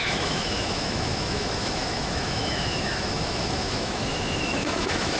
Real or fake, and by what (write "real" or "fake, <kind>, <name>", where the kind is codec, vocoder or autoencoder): fake, autoencoder, DAC-VAE